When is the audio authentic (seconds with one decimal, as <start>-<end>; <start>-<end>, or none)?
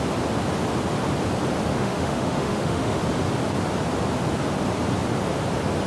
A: 0.0-1.7; 3.0-5.9